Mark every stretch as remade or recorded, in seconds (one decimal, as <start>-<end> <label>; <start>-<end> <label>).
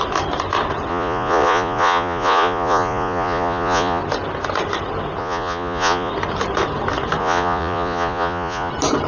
0.0-0.9 recorded; 0.9-4.0 remade; 4.0-5.2 recorded; 5.2-6.1 remade; 6.1-7.2 recorded; 7.2-8.7 remade; 8.7-9.1 recorded